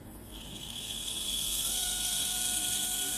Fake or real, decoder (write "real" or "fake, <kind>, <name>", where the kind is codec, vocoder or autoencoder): fake, codec, SNAC